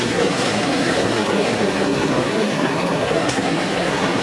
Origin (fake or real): fake